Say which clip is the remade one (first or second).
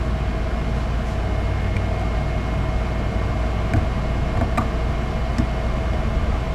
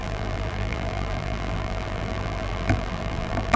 second